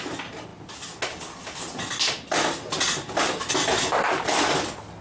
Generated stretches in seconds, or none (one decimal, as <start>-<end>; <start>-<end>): none

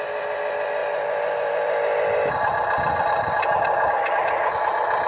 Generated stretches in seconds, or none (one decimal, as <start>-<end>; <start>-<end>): 0.8-3.9